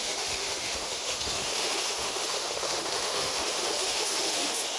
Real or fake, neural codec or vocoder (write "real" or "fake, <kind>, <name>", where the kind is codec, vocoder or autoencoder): fake, autoencoder, DAC-VAE